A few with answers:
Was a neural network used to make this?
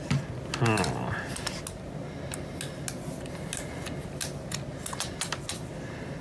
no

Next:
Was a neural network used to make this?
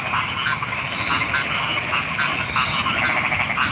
no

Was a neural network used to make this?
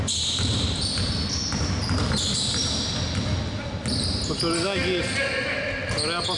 no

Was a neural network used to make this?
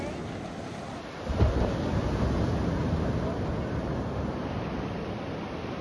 no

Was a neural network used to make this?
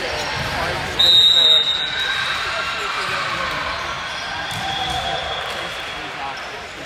no